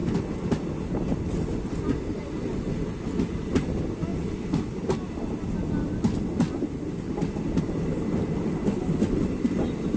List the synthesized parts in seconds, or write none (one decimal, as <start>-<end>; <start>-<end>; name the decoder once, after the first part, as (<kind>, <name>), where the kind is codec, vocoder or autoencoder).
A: none